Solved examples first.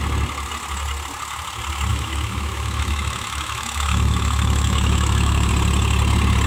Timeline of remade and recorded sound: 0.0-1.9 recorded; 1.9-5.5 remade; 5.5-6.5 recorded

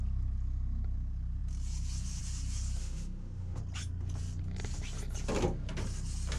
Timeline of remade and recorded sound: 0.0-2.8 recorded; 2.8-3.6 remade; 3.6-6.4 recorded

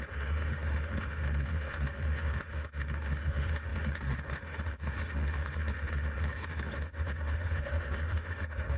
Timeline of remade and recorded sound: 0.0-8.8 remade

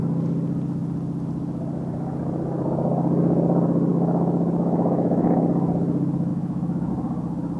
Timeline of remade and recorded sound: 0.0-3.9 recorded; 3.9-5.4 remade; 5.4-6.3 recorded; 6.3-6.9 remade; 6.9-7.6 recorded